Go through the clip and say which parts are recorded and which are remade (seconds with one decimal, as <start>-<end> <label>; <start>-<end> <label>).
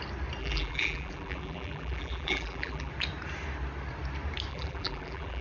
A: 0.0-0.4 recorded; 0.4-2.9 remade; 2.9-4.5 recorded; 4.5-5.4 remade